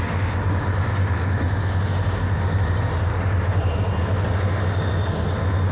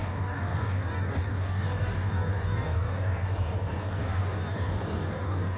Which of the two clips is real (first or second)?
first